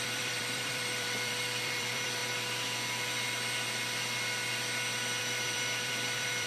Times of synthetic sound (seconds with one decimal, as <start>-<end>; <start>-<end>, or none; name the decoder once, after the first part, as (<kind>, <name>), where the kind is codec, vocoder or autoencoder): 0.0-2.2 (vocoder, BigVGAN v2); 5.2-6.5

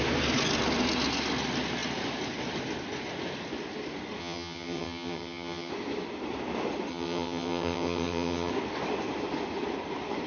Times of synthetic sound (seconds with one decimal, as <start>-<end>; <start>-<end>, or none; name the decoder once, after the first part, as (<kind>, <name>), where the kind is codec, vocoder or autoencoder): 4.2-5.7 (vocoder, HiFi-GAN); 6.9-8.5

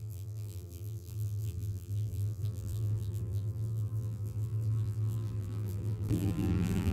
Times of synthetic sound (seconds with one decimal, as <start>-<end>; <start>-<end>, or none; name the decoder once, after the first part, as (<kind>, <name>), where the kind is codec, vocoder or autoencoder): 0.0-6.9 (vocoder, BigVGAN v2)

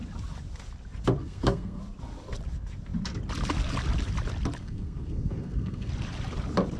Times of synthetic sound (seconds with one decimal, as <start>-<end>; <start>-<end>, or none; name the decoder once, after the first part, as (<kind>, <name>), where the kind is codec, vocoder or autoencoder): 1.2-1.8 (codec, SNAC); 4.6-5.9

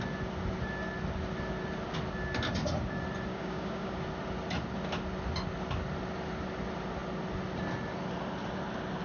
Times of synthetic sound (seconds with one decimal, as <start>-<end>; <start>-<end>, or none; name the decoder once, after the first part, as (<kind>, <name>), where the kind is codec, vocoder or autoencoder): 3.3-4.0 (codec, DAC)

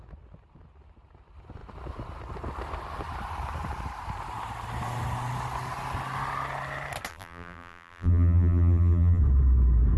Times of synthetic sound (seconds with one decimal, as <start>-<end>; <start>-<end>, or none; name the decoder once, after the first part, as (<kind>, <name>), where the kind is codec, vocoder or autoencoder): 7.1-9.2 (vocoder, BigVGAN v2)

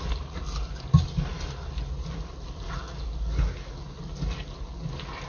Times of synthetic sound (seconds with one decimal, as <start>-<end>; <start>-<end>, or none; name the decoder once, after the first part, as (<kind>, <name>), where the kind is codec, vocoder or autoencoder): none

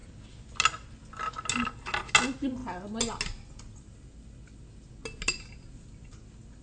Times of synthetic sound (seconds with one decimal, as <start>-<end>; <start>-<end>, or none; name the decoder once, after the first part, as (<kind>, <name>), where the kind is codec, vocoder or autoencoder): none